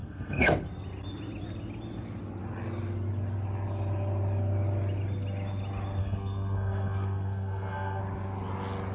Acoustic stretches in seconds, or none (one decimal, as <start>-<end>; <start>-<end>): 0.5-6.0; 8.0-8.9